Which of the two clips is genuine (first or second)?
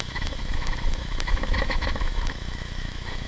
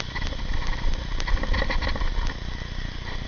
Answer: second